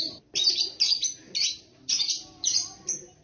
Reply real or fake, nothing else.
real